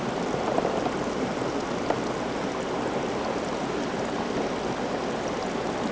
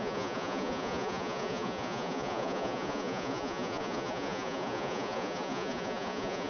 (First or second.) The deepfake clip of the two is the second